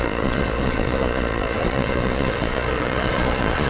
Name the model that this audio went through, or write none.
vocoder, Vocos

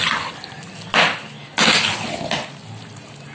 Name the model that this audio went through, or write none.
none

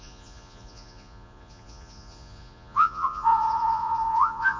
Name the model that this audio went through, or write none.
vocoder, Vocos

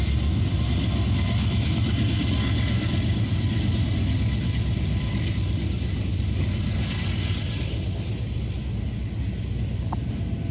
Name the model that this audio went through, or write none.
none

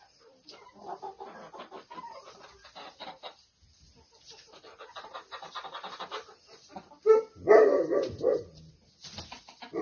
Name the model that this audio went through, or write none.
none